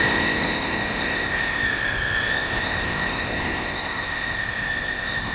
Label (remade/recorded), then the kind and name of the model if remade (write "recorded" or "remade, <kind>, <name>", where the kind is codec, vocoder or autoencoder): remade, codec, ZipCodec